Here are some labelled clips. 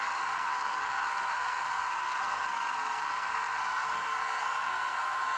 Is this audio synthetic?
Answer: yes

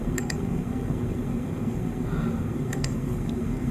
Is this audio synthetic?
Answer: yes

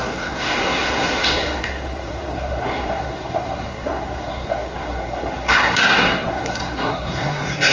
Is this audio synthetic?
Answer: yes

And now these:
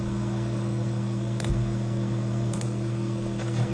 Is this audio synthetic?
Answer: yes